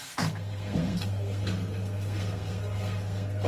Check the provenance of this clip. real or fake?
fake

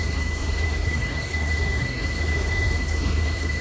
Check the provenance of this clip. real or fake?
fake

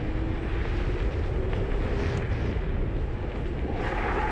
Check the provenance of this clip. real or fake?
real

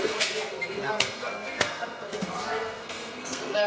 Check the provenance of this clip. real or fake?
fake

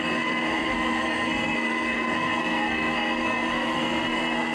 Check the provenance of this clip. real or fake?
fake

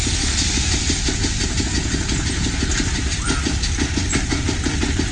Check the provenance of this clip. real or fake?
real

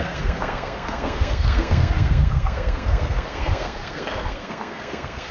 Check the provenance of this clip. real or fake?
fake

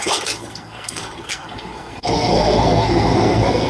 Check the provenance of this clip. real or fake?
fake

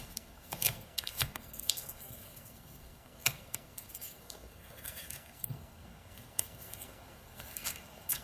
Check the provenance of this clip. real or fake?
fake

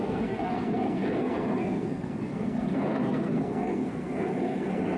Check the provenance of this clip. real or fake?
fake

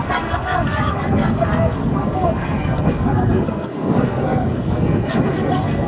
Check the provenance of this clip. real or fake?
fake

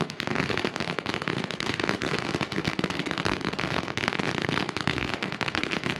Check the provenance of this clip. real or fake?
fake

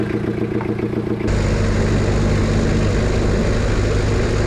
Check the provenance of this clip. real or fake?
real